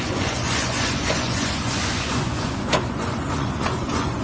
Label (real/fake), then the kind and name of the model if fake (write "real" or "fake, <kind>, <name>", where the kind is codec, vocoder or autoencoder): fake, vocoder, Vocos